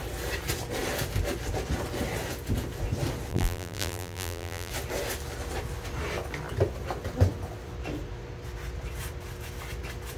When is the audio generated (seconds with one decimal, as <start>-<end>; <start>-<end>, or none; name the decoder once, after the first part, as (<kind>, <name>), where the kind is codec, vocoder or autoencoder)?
3.3-4.7 (vocoder, BigVGAN v2)